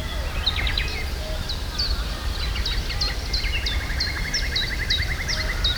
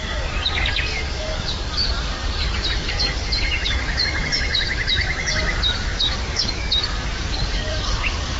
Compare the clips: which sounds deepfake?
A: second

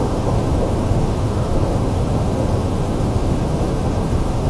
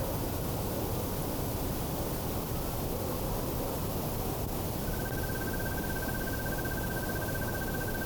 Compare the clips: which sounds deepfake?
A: first